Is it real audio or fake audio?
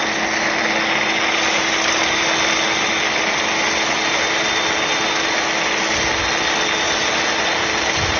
real